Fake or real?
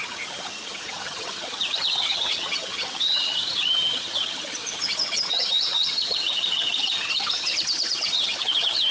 fake